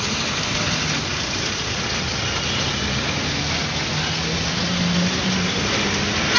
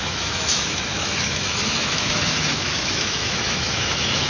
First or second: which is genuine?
first